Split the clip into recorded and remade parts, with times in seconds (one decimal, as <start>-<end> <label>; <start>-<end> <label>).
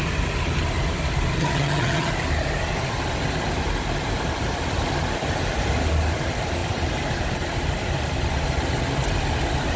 0.0-1.4 recorded; 1.4-2.1 remade; 2.1-9.8 recorded